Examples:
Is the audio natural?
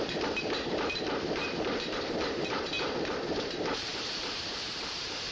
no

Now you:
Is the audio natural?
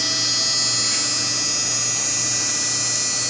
yes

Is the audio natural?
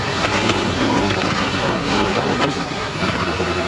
no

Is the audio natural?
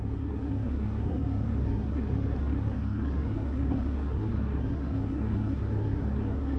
no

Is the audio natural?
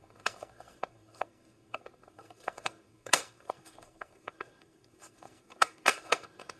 no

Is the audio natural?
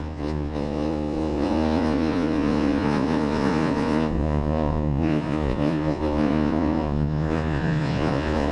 no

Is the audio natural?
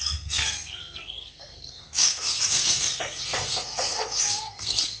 no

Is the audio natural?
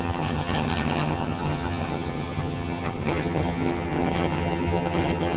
no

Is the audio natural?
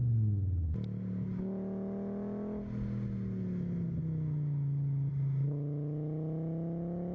yes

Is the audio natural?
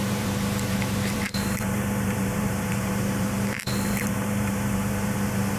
no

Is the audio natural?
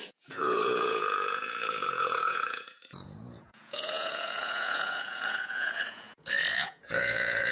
no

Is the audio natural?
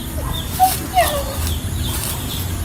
yes